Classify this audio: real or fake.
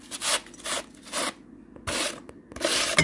real